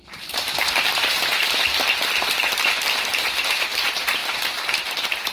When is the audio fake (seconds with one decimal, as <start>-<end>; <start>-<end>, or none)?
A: 0.0-1.3; 3.4-5.3